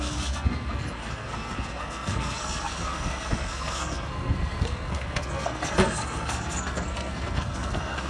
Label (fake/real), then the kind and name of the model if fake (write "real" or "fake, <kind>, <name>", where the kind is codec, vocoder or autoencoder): fake, codec, SNAC